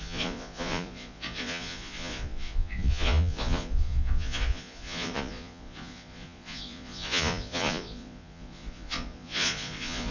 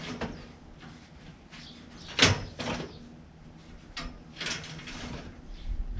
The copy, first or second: first